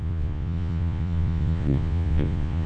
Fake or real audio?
fake